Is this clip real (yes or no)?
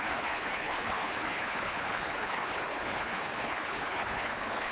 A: no